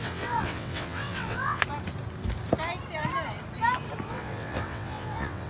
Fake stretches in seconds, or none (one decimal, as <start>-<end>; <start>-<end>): 0.0-1.6; 4.1-5.5